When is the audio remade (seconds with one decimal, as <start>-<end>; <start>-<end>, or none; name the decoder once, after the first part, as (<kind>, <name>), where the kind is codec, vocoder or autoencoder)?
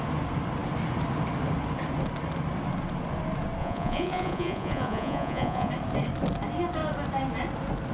3.6-5.7 (vocoder, Vocos)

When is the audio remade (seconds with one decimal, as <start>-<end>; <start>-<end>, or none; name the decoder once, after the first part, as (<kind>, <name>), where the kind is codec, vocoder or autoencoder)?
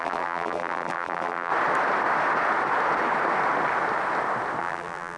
0.0-1.5 (vocoder, BigVGAN v2); 4.6-5.2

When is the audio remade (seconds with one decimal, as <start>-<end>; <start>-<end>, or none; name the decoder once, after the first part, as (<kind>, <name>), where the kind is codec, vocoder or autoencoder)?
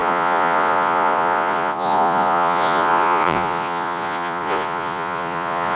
0.0-5.8 (vocoder, Vocos)